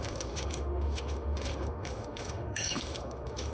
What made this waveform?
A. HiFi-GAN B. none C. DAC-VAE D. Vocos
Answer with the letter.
C